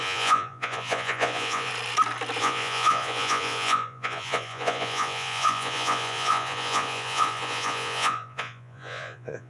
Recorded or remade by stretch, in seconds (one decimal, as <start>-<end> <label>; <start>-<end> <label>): 0.0-1.7 remade; 1.7-2.4 recorded; 2.4-9.5 remade